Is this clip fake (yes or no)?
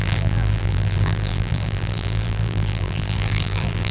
yes